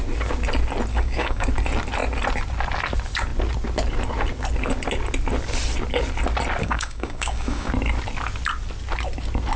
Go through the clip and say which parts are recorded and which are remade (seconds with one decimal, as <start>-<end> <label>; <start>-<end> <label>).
0.0-0.9 recorded; 0.9-1.5 remade; 1.5-6.6 recorded; 6.6-7.7 remade; 7.7-9.6 recorded